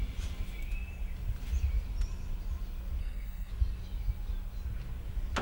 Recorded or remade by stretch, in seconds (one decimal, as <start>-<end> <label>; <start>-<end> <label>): 0.0-3.0 recorded; 3.0-3.5 remade; 3.5-5.4 recorded